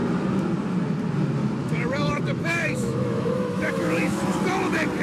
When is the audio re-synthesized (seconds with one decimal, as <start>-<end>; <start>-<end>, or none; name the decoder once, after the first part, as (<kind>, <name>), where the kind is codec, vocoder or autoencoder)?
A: 1.6-4.2 (autoencoder, DAC-VAE)